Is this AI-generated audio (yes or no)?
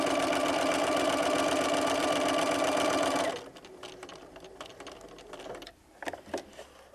no